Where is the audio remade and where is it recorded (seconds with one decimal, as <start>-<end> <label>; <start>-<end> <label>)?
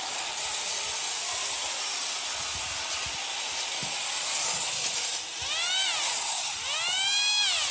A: 0.0-7.7 recorded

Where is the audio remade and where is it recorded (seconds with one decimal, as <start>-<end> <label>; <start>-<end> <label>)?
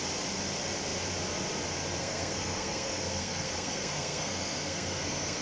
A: 0.0-2.0 recorded; 2.0-5.4 remade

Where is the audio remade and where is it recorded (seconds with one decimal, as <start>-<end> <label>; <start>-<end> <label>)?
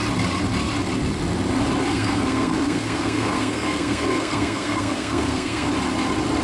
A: 0.0-1.9 recorded; 1.9-5.7 remade; 5.7-6.4 recorded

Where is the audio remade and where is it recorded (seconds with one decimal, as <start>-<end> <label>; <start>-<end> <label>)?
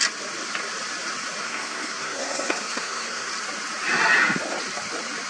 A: 0.0-1.4 recorded; 1.4-3.3 remade; 3.3-5.3 recorded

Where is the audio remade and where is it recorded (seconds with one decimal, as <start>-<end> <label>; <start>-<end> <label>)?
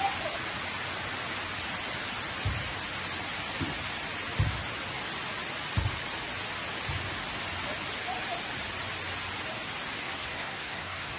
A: 0.0-10.0 recorded; 10.0-11.2 remade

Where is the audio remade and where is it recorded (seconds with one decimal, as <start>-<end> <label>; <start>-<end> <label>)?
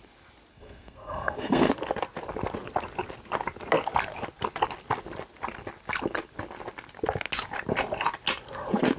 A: 0.0-0.5 recorded; 0.5-1.7 remade; 1.7-9.0 recorded